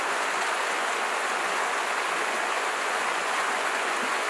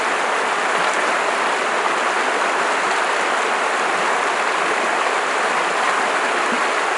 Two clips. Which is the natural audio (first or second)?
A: second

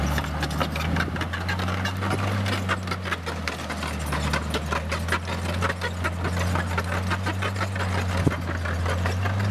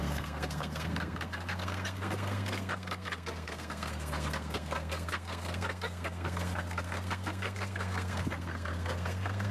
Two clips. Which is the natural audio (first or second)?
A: first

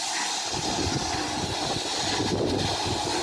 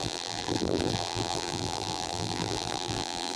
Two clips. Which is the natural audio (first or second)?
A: first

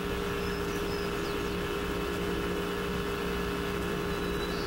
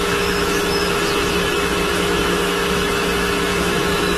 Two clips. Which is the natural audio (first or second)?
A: first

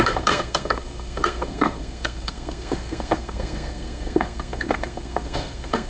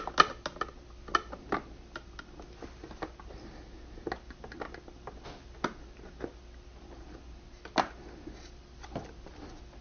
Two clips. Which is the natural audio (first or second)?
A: second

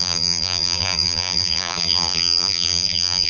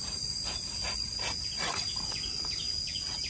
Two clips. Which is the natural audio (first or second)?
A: second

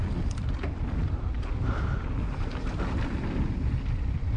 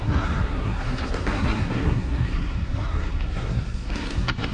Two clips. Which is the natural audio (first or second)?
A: first